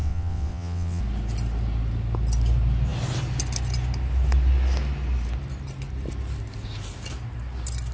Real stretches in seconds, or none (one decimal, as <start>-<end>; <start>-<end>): 1.0-7.9